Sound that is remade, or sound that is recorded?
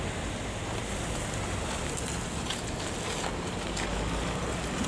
recorded